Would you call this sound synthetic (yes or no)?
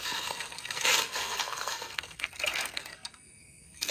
yes